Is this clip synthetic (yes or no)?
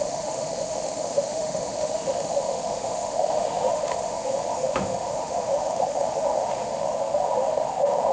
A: yes